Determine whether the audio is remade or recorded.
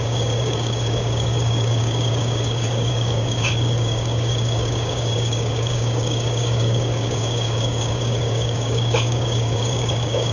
remade